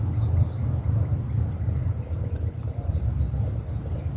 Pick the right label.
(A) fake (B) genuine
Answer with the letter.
B